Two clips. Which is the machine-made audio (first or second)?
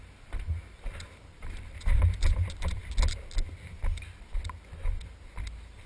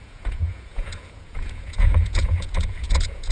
second